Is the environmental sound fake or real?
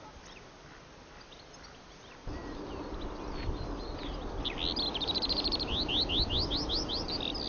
real